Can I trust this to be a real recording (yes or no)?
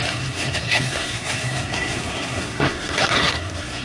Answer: no